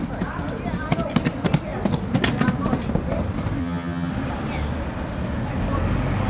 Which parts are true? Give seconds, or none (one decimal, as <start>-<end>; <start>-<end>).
0.0-3.6; 4.1-6.3